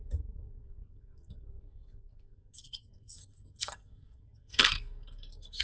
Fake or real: fake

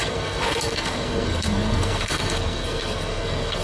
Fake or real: fake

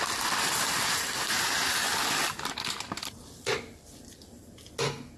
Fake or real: real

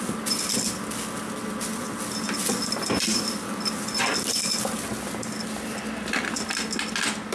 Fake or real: real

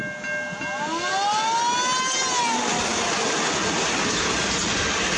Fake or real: real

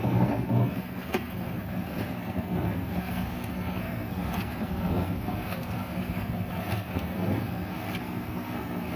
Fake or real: fake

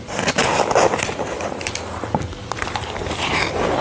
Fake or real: real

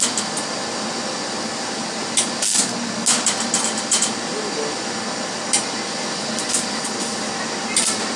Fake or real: real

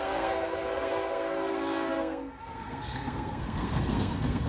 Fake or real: fake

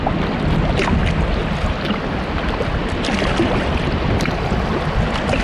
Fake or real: real